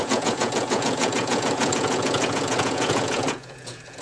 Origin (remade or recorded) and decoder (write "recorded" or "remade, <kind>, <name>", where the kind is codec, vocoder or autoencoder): remade, vocoder, Vocos